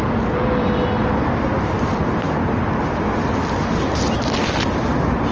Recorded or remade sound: recorded